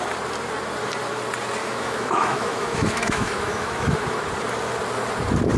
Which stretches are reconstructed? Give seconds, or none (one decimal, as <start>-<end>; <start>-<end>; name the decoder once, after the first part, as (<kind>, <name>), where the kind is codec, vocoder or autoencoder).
1.6-4.2 (autoencoder, DAC-VAE)